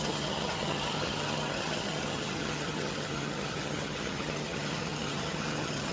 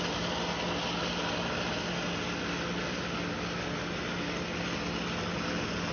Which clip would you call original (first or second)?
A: second